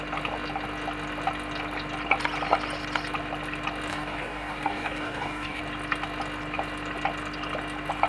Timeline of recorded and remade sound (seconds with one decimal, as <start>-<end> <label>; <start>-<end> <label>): 0.0-3.9 recorded; 3.9-5.6 remade; 5.6-8.1 recorded